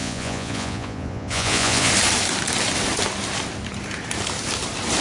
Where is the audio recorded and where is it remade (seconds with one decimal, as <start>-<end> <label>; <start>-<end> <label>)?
0.0-1.9 remade; 1.9-5.0 recorded